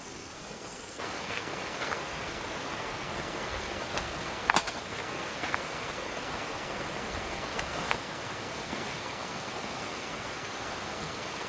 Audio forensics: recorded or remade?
remade